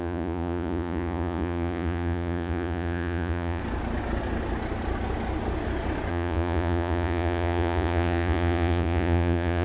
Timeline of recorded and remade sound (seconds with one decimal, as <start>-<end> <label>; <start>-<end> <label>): 0.0-3.6 remade; 3.6-6.1 recorded; 6.1-9.6 remade